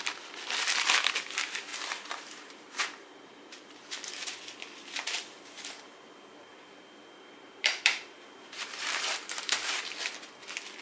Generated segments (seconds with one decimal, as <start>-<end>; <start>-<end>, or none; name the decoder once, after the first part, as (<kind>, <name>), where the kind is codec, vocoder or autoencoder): 1.7-4.1 (vocoder, BigVGAN v2); 4.8-6.0; 6.5-9.8